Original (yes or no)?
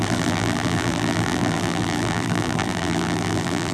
no